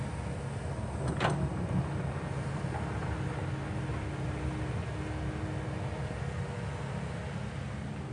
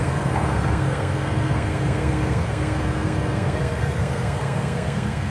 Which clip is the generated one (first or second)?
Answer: second